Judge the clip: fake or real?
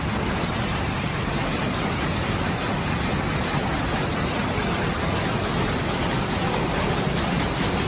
real